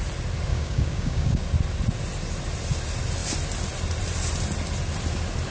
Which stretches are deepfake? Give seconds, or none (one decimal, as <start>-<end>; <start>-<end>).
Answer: 0.5-1.4